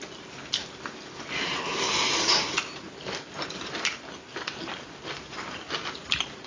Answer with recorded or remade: recorded